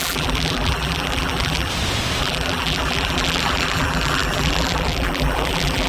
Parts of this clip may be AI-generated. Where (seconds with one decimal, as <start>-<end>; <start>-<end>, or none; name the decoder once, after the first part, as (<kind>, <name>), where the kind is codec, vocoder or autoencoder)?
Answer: 0.0-1.7 (vocoder, BigVGAN v2); 2.2-5.9